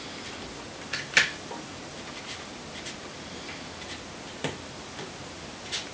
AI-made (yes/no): no